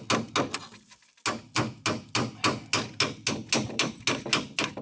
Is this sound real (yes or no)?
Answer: yes